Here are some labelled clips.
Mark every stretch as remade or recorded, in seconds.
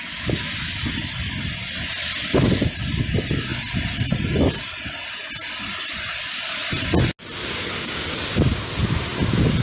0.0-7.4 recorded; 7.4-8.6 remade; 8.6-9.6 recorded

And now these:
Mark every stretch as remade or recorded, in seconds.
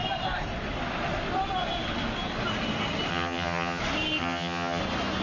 0.0-3.1 recorded; 3.1-3.8 remade; 3.8-4.2 recorded; 4.2-4.8 remade; 4.8-5.2 recorded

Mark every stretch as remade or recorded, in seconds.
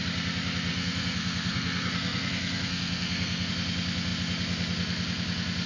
0.0-0.7 recorded; 0.7-3.5 remade; 3.5-5.7 recorded